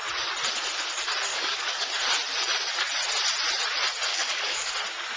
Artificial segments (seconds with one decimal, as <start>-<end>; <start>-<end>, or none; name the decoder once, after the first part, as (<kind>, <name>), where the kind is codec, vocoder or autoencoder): 1.3-1.9 (codec, DAC); 4.1-4.7